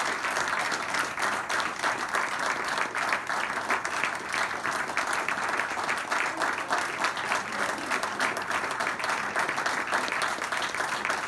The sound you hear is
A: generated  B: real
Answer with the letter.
B